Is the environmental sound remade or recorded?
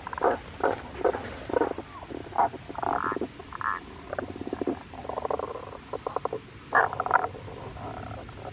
recorded